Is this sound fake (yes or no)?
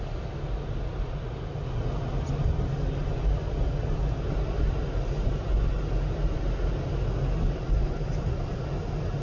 no